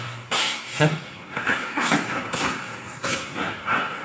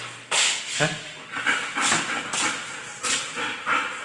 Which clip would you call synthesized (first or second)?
first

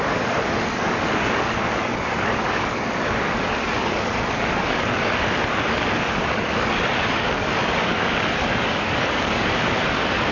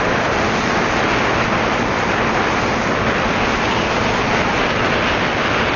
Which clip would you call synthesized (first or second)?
first